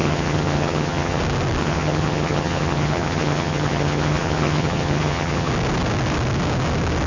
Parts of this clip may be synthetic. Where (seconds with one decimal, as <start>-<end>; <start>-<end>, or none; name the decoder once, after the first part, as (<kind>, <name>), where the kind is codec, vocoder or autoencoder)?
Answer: 0.0-1.2 (vocoder, HiFi-GAN); 1.6-5.5